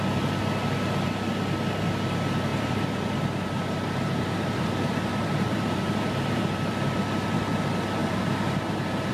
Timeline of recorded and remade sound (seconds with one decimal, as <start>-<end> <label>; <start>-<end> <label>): 0.0-2.5 recorded; 2.5-6.7 remade; 6.7-8.0 recorded; 8.0-9.1 remade